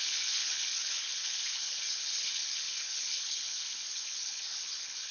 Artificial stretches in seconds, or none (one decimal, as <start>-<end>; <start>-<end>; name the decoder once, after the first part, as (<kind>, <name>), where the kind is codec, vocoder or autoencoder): 0.0-5.1 (codec, HILCodec)